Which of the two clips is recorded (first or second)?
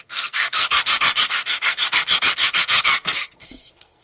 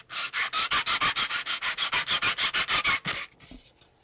second